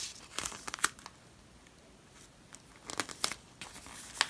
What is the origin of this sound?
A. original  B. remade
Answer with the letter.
A